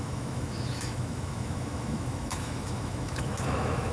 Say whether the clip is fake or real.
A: fake